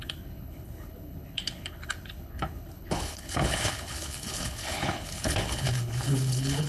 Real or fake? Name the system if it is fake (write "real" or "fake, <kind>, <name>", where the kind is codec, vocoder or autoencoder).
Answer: fake, codec, HILCodec